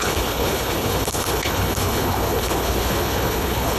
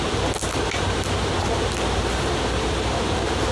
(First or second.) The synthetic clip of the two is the first